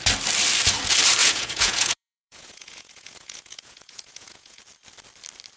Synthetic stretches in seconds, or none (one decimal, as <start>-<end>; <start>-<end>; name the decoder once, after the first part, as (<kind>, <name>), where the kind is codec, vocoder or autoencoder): 1.2-4.6 (vocoder, Vocos)